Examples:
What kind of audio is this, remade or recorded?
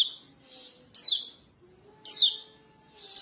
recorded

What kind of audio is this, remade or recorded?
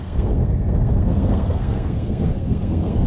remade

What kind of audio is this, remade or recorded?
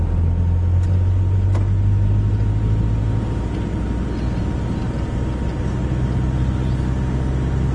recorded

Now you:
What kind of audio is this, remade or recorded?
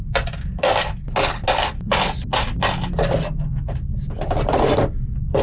recorded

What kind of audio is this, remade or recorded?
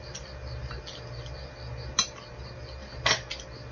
recorded